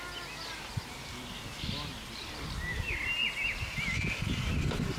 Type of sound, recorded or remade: recorded